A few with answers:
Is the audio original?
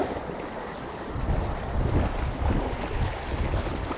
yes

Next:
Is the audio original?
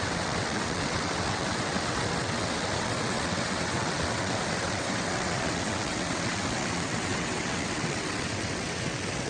no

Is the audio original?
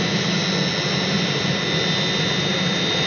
yes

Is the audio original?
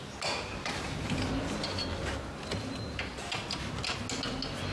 yes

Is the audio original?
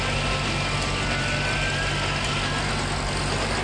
yes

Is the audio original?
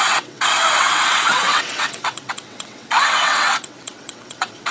no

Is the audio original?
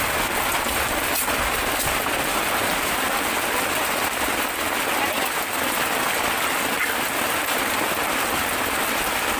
yes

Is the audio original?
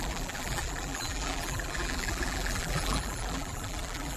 no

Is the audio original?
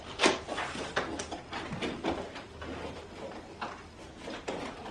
yes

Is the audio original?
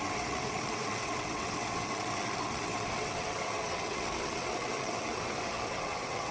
no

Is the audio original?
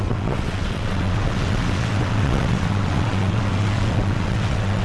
no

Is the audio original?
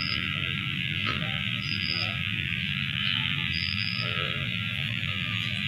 no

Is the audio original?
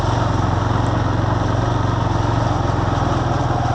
yes